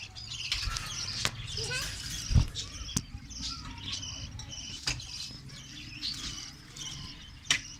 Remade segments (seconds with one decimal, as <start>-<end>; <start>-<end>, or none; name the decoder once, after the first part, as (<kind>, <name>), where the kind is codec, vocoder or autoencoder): 4.5-5.5 (vocoder, BigVGAN v2)